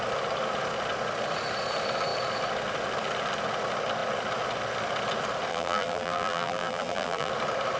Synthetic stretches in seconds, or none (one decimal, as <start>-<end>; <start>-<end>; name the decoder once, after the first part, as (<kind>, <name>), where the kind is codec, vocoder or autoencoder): 5.5-7.3 (vocoder, BigVGAN v2)